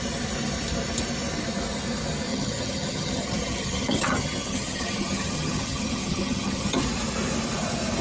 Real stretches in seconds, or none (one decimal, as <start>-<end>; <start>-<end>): 0.0-2.3; 6.8-8.0